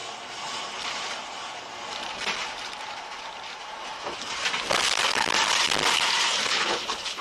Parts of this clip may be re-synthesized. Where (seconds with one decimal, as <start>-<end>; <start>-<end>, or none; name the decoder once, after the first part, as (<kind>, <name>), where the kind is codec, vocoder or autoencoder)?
6.4-7.2 (codec, HILCodec)